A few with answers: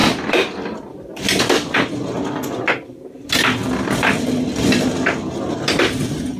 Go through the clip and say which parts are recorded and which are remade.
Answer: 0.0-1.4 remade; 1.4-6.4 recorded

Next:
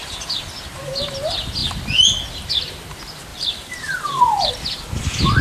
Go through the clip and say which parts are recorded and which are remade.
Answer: 0.0-3.3 recorded; 3.3-4.5 remade; 4.5-5.4 recorded